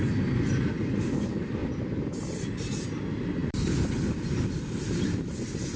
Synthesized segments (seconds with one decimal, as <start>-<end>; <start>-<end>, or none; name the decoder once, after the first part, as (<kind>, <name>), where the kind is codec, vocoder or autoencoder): 1.6-3.0 (vocoder, BigVGAN v2); 3.4-4.2